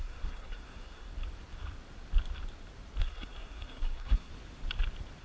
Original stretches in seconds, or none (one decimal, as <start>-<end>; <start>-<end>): 1.1-3.0; 4.3-5.2